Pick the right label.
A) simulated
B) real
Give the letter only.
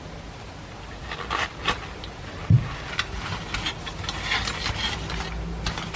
B